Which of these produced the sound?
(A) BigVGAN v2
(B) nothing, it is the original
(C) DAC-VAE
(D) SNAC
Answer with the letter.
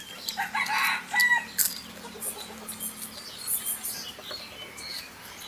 B